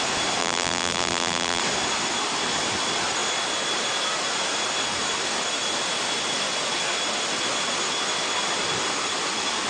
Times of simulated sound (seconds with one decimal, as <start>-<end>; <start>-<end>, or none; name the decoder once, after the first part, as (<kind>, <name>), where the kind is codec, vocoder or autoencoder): 0.4-1.6 (vocoder, BigVGAN v2)